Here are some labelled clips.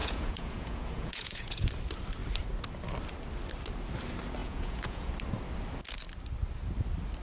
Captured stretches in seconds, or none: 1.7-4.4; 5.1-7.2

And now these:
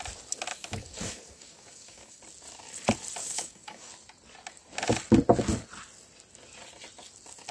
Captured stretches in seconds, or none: 0.0-0.5; 2.2-3.2; 3.9-7.5